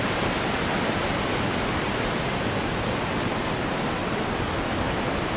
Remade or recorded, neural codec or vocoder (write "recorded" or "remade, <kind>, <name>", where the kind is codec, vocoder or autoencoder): recorded